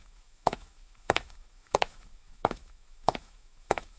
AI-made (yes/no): yes